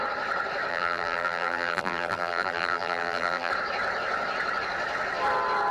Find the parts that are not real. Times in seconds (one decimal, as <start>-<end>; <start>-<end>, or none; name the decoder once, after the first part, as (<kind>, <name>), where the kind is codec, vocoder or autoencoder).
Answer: 0.7-3.5 (vocoder, BigVGAN v2)